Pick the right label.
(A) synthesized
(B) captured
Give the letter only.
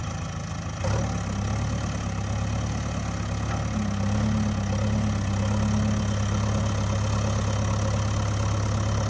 B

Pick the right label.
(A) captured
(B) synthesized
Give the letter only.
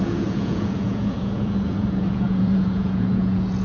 B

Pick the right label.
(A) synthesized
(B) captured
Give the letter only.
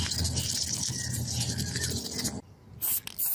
B